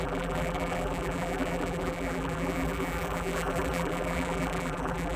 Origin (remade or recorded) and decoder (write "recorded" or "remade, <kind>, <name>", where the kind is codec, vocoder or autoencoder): remade, vocoder, BigVGAN v2